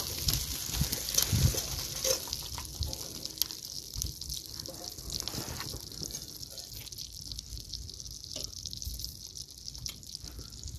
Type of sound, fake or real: real